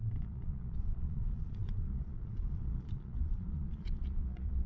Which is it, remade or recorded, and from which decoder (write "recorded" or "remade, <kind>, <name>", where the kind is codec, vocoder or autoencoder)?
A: remade, vocoder, Vocos